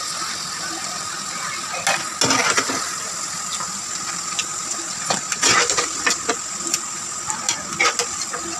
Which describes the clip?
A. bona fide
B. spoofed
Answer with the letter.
A